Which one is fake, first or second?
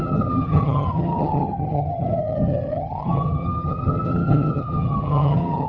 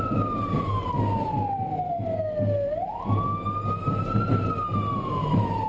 first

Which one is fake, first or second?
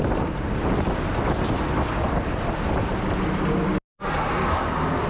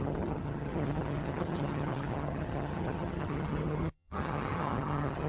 second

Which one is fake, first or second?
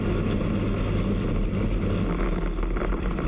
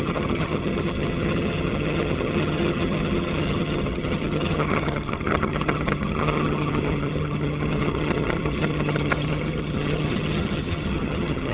second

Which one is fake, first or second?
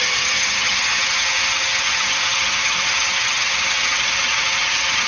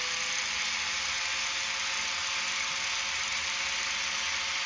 first